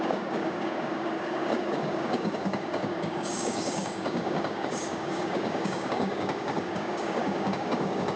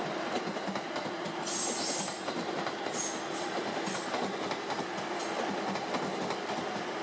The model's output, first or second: first